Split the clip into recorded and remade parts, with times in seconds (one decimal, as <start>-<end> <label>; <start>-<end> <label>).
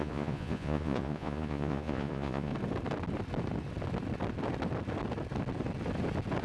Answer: 0.0-2.5 remade; 2.5-6.4 recorded